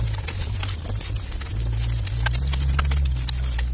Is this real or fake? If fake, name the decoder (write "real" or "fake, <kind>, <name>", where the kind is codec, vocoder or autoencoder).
real